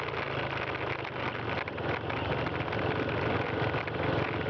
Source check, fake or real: real